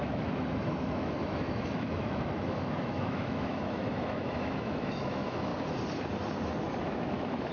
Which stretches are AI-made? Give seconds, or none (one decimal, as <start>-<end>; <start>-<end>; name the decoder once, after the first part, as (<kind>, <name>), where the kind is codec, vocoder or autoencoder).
0.0-5.5 (autoencoder, DAC-VAE); 6.8-7.5